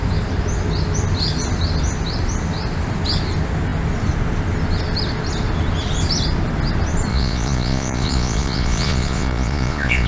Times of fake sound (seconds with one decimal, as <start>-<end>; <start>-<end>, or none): 7.1-10.1